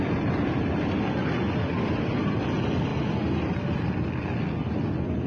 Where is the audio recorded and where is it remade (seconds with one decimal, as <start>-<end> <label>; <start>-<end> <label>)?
0.0-5.3 recorded